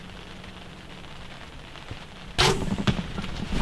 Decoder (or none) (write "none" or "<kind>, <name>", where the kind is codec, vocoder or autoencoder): none